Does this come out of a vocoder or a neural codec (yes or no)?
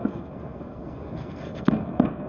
yes